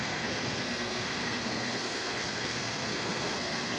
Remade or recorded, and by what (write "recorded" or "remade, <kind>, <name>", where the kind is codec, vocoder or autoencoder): remade, codec, SNAC